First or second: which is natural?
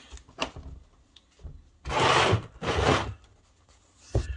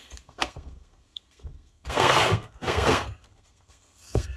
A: first